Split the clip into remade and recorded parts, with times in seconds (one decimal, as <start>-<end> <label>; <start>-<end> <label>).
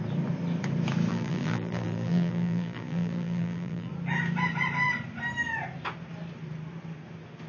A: 0.0-1.1 recorded; 1.1-3.9 remade; 3.9-7.5 recorded